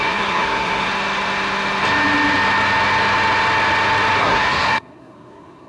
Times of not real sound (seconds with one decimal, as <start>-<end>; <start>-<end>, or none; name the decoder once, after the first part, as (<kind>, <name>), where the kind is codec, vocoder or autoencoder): 0.0-0.9 (codec, SNAC); 4.2-5.7